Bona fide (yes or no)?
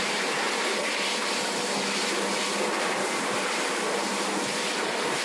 yes